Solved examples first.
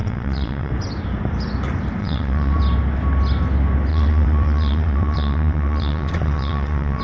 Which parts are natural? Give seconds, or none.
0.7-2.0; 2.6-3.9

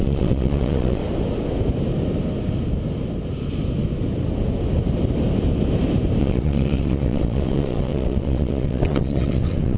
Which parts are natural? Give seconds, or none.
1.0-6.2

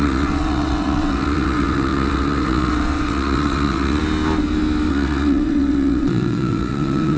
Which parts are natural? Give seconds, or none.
4.0-4.9